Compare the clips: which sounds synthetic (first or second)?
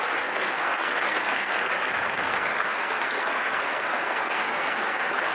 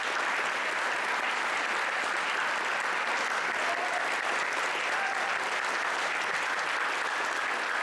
first